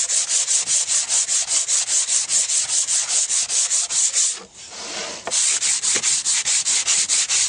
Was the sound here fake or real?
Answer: real